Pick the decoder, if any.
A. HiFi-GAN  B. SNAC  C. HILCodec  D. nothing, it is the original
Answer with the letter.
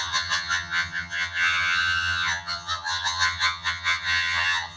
A